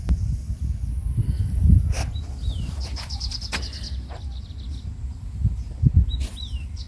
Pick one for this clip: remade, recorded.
recorded